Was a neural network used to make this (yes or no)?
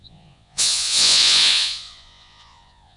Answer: yes